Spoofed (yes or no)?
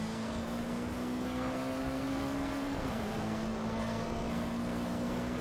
yes